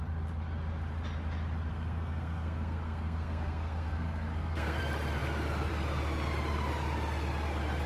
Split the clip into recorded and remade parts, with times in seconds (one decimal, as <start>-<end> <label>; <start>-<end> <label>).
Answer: 0.0-1.7 recorded; 1.7-4.8 remade; 4.8-7.9 recorded

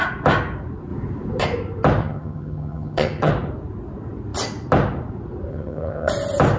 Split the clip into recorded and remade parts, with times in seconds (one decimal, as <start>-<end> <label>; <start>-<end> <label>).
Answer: 0.0-2.0 recorded; 2.0-3.3 remade; 3.3-5.5 recorded; 5.5-6.1 remade; 6.1-6.6 recorded

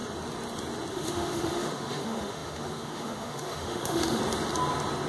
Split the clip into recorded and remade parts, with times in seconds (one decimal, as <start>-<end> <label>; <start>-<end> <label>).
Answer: 0.0-0.9 recorded; 0.9-4.2 remade; 4.2-5.1 recorded

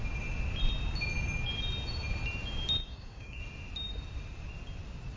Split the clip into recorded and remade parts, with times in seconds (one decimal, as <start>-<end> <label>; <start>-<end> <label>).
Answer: 0.0-2.8 recorded; 2.8-3.4 remade; 3.4-5.2 recorded

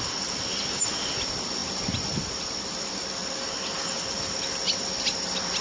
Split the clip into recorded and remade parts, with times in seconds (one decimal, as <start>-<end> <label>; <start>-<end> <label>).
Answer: 0.0-5.6 recorded

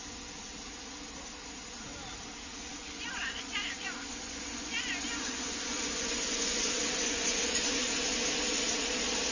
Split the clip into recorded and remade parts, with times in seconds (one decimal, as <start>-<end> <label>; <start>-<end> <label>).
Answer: 0.0-2.7 recorded; 2.7-7.9 remade; 7.9-9.3 recorded

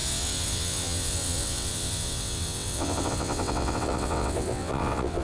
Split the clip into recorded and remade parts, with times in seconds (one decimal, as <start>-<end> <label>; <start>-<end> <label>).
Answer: 0.0-5.2 remade